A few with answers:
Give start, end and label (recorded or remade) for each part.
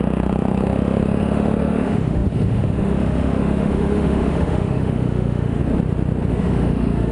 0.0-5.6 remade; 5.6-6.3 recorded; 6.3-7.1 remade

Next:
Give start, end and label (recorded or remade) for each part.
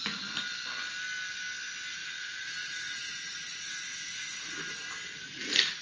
0.0-2.0 recorded; 2.0-4.4 remade; 4.4-5.8 recorded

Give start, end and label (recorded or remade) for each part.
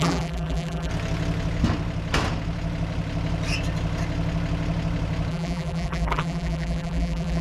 0.0-0.9 remade; 0.9-5.3 recorded; 5.3-7.4 remade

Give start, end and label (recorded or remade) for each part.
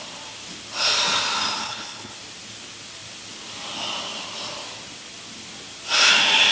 0.0-1.6 recorded; 1.6-2.1 remade; 2.1-6.5 recorded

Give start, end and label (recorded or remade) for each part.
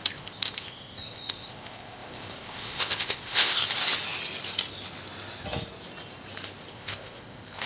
0.0-3.6 remade; 3.6-6.7 recorded; 6.7-7.7 remade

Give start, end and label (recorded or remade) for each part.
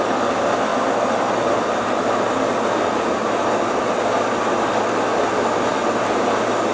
0.0-6.7 recorded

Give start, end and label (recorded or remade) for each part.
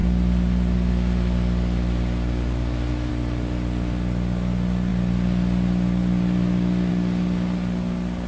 0.0-8.3 recorded